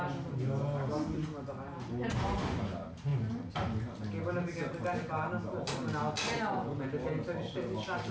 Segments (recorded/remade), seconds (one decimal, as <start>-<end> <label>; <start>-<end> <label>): 0.0-8.1 recorded